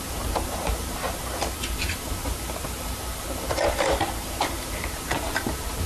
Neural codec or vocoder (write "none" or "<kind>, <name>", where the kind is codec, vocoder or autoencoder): vocoder, BigVGAN v2